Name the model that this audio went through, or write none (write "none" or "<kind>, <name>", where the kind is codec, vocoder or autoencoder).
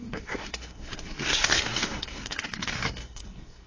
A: codec, SNAC